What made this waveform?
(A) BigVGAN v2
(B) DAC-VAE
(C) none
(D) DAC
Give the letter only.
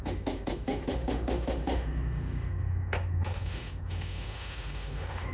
B